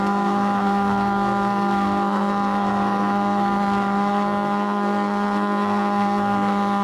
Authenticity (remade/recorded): remade